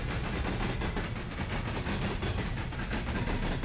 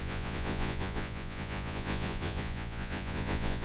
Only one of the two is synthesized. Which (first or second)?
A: second